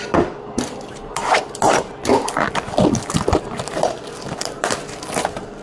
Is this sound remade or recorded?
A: remade